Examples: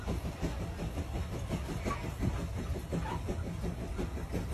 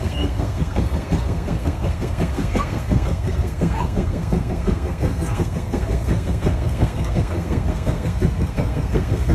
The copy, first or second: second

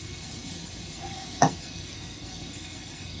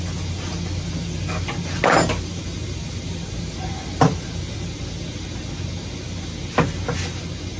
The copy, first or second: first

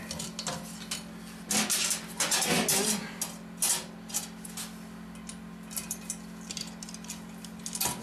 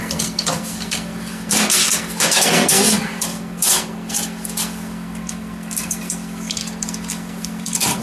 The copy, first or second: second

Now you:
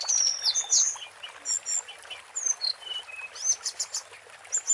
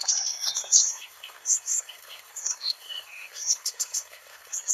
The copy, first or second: second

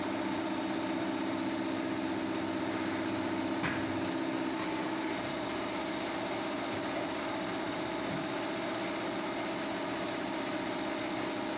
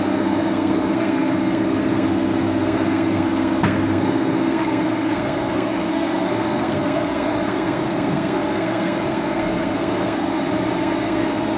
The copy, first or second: second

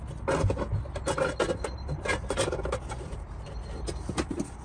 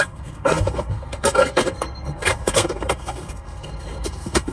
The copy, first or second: second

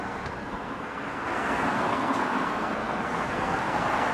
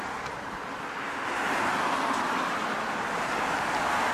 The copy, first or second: first